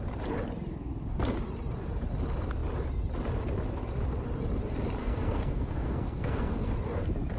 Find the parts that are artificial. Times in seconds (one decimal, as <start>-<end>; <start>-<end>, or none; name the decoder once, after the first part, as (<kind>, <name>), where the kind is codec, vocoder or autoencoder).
5.0-6.7 (codec, SNAC)